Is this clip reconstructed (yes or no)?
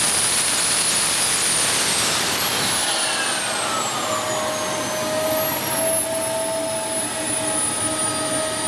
no